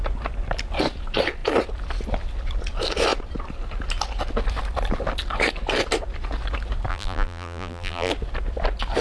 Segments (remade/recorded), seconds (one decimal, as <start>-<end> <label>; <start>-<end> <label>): 0.0-6.9 recorded; 6.9-8.1 remade; 8.1-9.0 recorded

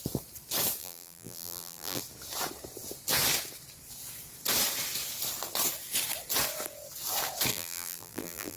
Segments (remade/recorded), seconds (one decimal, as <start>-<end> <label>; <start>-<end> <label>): 0.0-0.8 recorded; 0.8-2.0 remade; 2.0-7.5 recorded; 7.5-8.6 remade

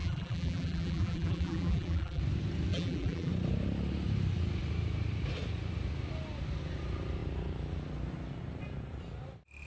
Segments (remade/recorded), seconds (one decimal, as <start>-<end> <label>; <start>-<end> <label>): 0.0-2.2 remade; 2.2-2.7 recorded; 2.7-3.3 remade; 3.3-9.7 recorded

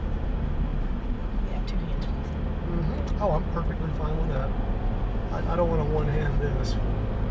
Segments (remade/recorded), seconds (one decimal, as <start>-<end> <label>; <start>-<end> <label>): 0.0-7.3 recorded

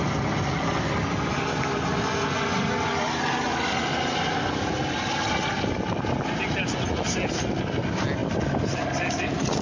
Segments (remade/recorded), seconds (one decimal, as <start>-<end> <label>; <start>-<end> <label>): 0.0-9.6 recorded